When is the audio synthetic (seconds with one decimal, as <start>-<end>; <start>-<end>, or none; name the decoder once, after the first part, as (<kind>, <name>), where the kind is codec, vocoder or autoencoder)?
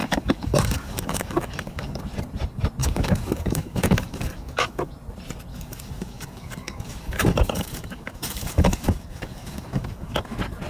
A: 0.0-2.0 (codec, DAC); 2.8-4.9; 5.5-10.2